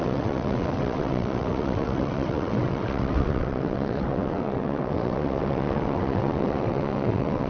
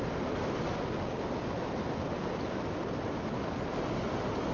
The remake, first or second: first